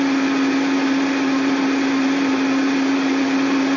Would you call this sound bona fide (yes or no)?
yes